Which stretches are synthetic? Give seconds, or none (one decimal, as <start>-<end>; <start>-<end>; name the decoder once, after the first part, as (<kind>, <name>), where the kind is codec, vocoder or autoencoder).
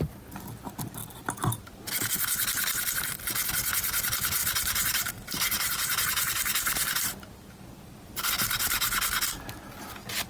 4.4-8.3 (vocoder, BigVGAN v2)